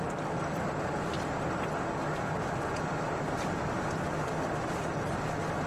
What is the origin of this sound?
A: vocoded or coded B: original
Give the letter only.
B